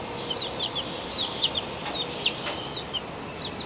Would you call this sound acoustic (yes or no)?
yes